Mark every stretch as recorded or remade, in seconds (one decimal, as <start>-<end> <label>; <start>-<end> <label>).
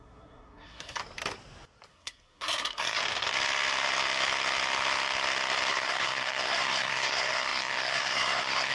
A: 0.0-1.0 remade; 1.0-1.9 recorded; 1.9-3.0 remade; 3.0-5.7 recorded; 5.7-8.7 remade